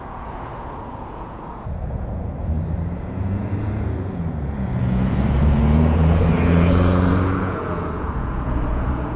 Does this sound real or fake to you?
fake